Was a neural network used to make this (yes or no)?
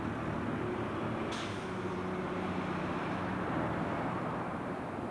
no